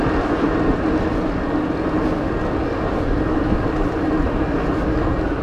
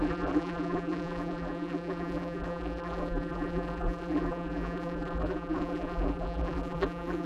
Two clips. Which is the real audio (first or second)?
first